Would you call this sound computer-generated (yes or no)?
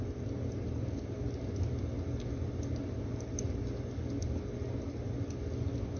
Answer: no